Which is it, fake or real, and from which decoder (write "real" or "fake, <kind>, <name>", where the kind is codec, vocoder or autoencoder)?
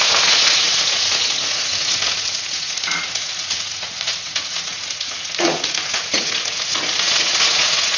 fake, vocoder, Vocos